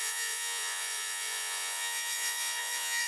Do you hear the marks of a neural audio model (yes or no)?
yes